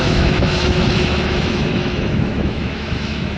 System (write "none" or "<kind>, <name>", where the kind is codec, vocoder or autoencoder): autoencoder, DAC-VAE